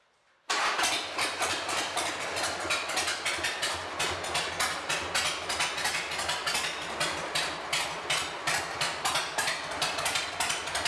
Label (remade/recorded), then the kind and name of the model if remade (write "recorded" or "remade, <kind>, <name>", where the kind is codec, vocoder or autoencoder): recorded